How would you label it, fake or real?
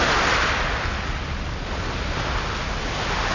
real